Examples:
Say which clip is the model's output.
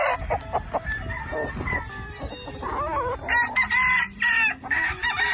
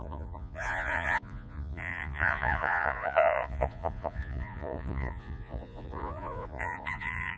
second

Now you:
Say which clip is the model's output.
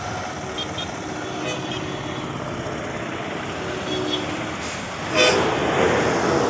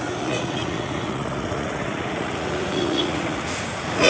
second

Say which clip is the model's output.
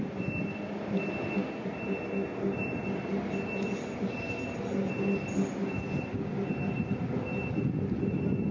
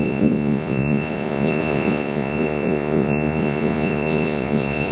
second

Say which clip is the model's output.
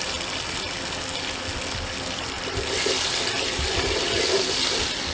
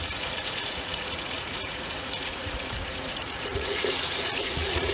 second